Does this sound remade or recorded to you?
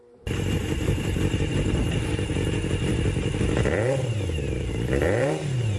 remade